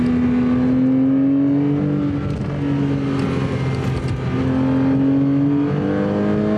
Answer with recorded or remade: recorded